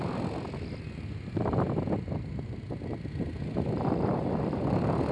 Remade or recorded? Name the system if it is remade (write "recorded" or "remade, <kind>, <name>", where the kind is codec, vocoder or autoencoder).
recorded